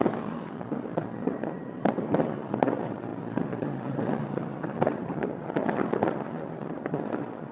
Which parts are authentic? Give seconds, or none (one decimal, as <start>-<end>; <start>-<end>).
none